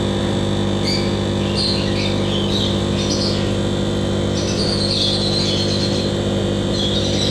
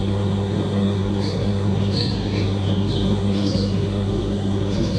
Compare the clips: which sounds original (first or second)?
first